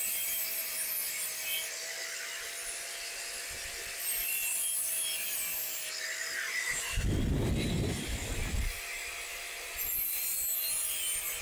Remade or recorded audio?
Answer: recorded